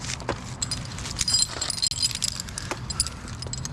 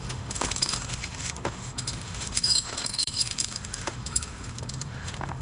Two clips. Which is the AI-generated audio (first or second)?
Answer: second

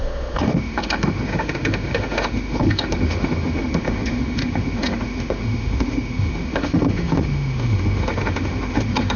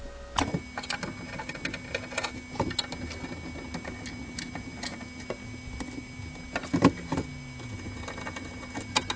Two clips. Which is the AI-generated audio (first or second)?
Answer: first